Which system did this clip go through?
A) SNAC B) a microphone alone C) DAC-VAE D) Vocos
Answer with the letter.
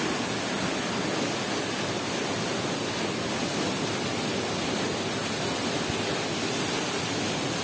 B